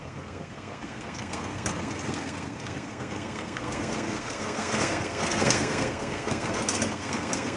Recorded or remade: remade